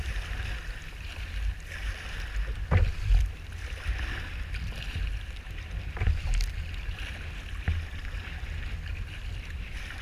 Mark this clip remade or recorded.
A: recorded